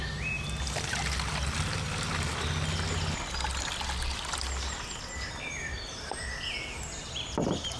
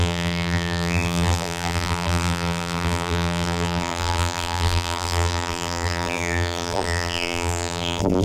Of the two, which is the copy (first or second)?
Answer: second